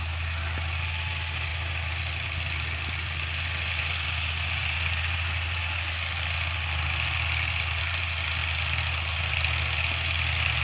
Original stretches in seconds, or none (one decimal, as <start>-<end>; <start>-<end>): 0.0-10.6